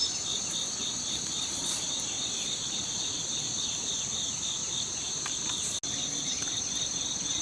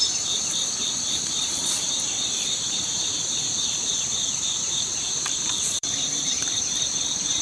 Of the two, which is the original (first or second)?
first